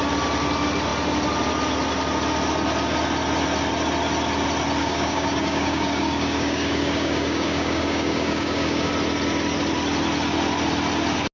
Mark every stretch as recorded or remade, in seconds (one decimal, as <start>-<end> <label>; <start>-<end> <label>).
0.0-4.8 recorded; 4.8-8.9 remade; 8.9-11.3 recorded